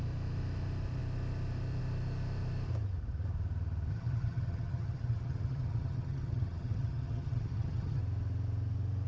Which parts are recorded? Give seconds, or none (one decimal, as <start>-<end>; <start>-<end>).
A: 0.0-3.9; 8.0-9.1